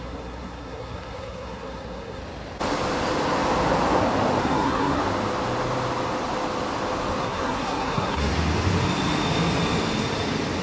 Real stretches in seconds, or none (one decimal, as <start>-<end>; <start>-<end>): 2.2-4.4; 5.0-7.2; 8.3-10.6